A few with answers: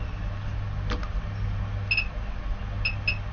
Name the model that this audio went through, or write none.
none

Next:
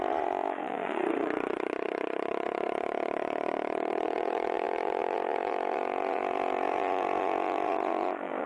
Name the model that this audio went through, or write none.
vocoder, Vocos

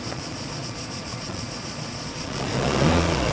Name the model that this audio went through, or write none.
vocoder, Vocos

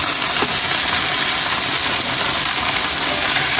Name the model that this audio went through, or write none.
none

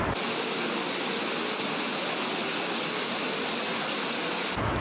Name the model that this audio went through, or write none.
none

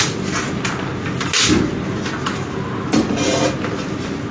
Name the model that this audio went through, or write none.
none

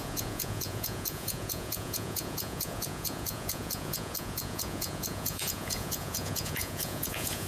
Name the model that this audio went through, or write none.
vocoder, Vocos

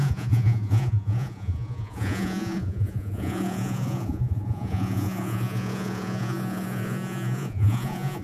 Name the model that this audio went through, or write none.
vocoder, Vocos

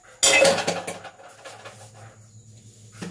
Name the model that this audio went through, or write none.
none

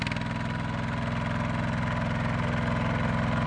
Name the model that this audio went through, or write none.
none